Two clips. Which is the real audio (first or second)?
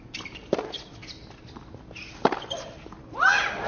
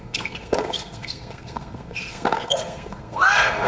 first